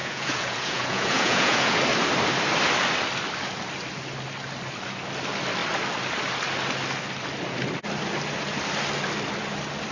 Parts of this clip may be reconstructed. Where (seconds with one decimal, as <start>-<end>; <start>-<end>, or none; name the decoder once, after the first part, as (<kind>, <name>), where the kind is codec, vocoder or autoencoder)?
0.0-1.8 (vocoder, Vocos)